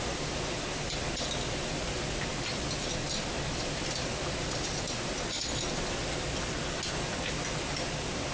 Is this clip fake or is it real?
real